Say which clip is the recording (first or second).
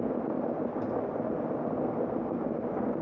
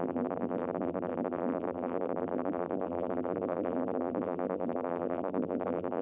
first